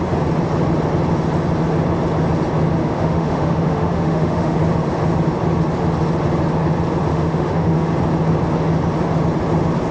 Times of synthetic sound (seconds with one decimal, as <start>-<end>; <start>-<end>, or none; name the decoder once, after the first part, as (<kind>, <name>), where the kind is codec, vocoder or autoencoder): 2.8-4.6 (autoencoder, DAC-VAE); 7.1-7.9